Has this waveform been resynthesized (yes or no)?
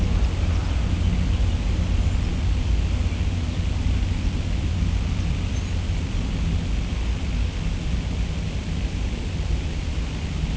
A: no